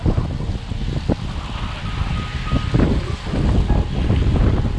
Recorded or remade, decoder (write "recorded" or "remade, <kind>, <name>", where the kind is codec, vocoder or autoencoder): recorded